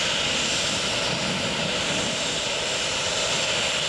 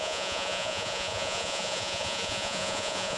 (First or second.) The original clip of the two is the first